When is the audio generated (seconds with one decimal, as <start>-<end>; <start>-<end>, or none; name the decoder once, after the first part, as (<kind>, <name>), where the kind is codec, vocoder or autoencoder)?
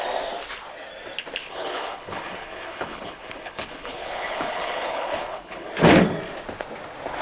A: 1.4-5.7 (codec, HILCodec)